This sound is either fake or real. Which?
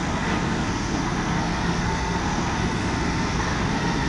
fake